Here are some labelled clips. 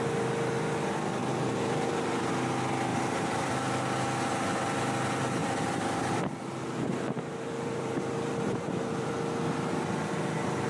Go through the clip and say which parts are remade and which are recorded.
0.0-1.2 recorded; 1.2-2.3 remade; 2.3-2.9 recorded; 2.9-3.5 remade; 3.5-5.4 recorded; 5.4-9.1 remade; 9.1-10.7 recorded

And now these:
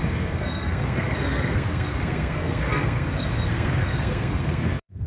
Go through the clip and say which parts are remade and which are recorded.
0.0-5.1 remade

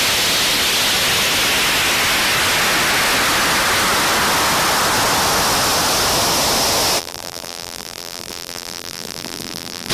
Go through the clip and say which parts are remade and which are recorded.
0.0-7.0 recorded; 7.0-9.9 remade

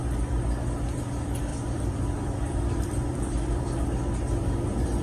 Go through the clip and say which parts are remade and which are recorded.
0.0-1.5 recorded; 1.5-3.8 remade; 3.8-5.0 recorded

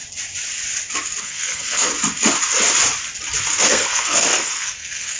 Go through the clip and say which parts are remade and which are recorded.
0.0-1.2 recorded; 1.2-1.9 remade; 1.9-3.7 recorded; 3.7-5.2 remade

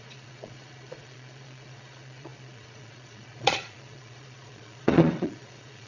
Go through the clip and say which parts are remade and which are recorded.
0.0-5.9 remade